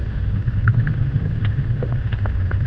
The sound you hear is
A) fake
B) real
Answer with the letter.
A